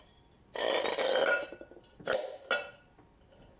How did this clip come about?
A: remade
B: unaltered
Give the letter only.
B